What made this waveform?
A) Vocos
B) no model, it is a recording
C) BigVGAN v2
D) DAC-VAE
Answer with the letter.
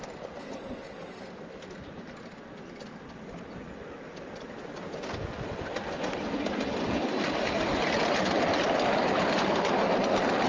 B